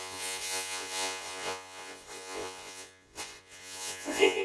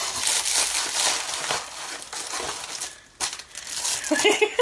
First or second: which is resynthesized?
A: first